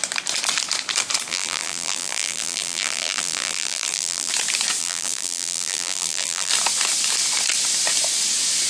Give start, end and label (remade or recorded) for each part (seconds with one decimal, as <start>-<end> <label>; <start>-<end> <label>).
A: 0.0-1.3 recorded; 1.3-4.3 remade; 4.3-4.8 recorded; 4.8-6.5 remade; 6.5-8.7 recorded